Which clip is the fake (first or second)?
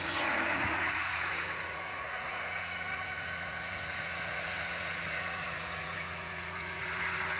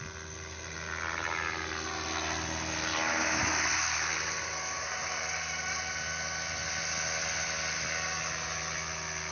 first